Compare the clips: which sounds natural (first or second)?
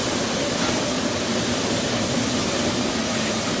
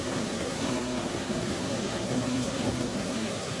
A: first